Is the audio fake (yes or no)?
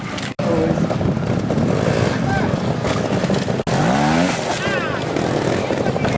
no